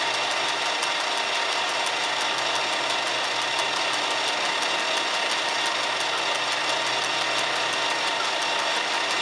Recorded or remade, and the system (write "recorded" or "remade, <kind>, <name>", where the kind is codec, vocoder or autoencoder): recorded